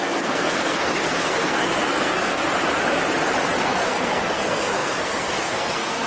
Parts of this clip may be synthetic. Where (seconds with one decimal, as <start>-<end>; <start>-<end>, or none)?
0.0-2.4; 3.6-6.1